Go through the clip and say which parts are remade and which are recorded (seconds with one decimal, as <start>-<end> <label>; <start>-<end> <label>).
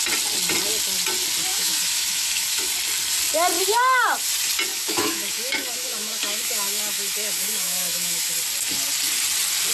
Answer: 0.0-1.5 recorded; 1.5-2.7 remade; 2.7-4.7 recorded; 4.7-8.3 remade; 8.3-9.7 recorded